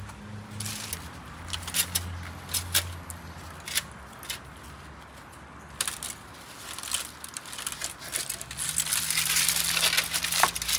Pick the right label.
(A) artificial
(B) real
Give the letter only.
B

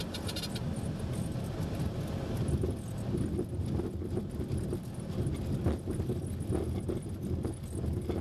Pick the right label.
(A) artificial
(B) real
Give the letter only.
B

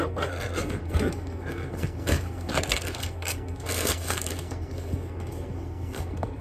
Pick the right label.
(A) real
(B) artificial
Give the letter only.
B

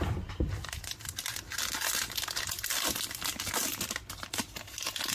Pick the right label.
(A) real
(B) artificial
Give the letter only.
A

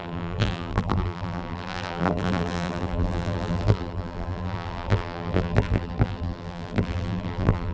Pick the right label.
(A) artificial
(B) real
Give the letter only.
A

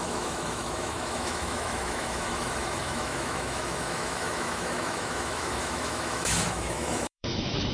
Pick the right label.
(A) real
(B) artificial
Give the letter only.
B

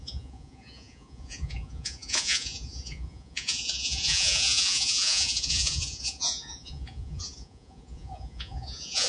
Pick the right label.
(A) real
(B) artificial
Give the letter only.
B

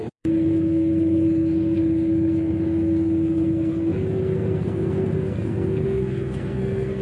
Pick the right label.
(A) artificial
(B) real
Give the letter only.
A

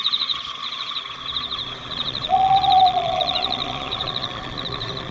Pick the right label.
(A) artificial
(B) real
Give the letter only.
A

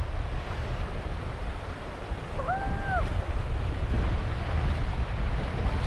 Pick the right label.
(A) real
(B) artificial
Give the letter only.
A